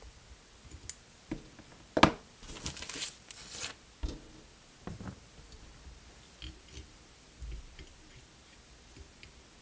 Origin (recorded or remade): recorded